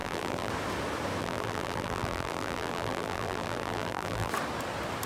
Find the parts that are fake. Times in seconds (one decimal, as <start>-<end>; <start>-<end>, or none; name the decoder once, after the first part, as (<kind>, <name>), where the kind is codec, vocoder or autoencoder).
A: 0.0-0.5 (vocoder, BigVGAN v2); 1.2-4.3